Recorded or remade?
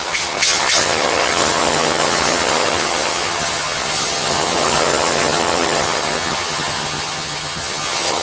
remade